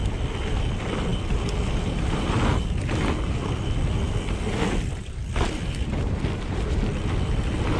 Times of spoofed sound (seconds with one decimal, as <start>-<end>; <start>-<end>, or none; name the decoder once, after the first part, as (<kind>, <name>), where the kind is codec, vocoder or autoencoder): none